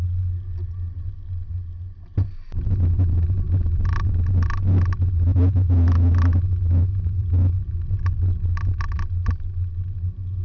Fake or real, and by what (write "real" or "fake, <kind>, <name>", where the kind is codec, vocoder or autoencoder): real